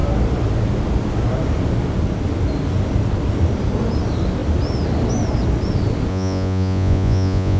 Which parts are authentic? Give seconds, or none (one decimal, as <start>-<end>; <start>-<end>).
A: 0.0-6.1